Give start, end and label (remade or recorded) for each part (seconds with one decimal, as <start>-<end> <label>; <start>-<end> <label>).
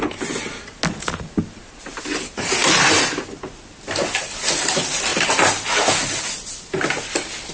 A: 0.0-7.5 recorded